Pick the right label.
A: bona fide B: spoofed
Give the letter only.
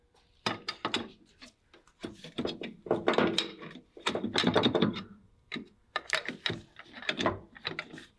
B